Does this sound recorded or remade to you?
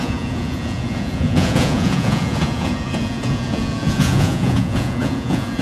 remade